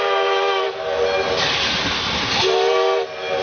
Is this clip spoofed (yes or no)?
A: no